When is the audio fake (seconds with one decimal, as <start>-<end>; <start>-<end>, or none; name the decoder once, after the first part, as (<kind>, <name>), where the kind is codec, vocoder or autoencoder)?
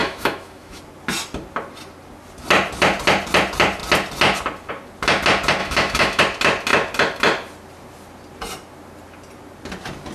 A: 0.0-0.8 (autoencoder, DAC-VAE); 5.6-6.2